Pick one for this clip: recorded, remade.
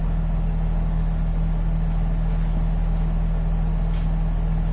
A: recorded